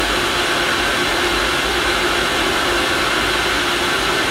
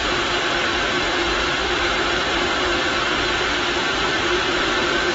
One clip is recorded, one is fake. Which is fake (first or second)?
second